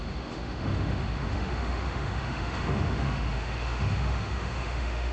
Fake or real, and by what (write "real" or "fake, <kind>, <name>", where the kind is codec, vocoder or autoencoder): fake, autoencoder, DAC-VAE